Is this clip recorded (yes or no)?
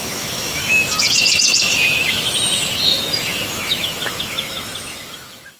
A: no